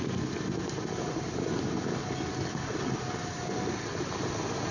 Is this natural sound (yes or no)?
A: yes